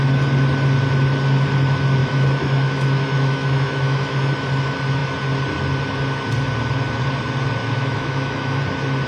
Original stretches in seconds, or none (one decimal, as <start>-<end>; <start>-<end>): 0.0-2.0; 4.3-7.6; 8.6-9.1